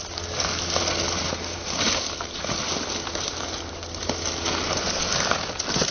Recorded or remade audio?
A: recorded